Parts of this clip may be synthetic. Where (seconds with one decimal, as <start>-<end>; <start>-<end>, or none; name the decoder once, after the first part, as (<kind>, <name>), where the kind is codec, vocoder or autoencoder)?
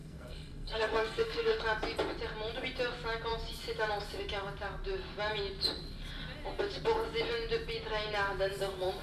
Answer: 0.0-1.6 (codec, SNAC)